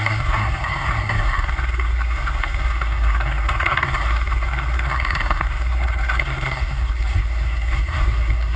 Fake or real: fake